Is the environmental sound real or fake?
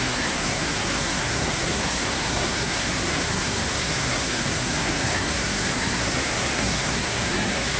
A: fake